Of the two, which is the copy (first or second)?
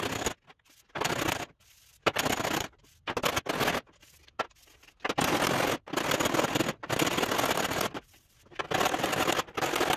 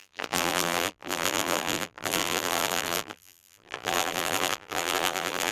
second